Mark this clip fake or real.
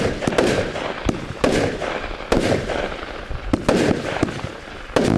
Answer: real